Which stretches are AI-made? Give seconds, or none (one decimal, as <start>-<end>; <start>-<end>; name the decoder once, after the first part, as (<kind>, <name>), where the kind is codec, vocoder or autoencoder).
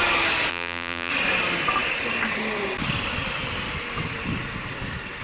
0.5-1.1 (vocoder, BigVGAN v2)